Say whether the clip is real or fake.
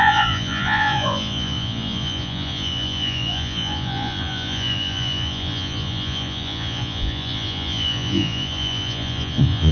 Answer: fake